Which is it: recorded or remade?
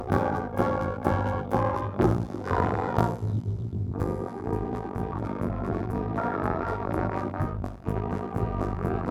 remade